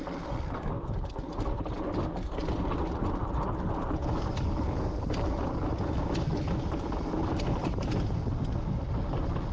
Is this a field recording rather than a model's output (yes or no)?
yes